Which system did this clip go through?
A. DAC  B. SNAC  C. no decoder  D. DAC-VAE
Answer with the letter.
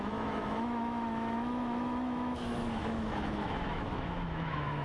D